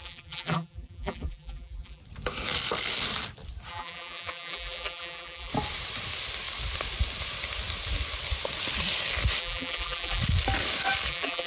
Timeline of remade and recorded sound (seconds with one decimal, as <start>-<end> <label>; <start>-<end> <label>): 0.0-2.0 remade; 2.0-3.7 recorded; 3.7-5.5 remade; 5.5-9.4 recorded; 9.4-10.2 remade; 10.2-11.1 recorded; 11.1-11.5 remade